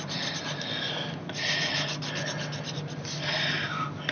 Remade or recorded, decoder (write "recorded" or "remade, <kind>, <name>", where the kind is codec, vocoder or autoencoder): recorded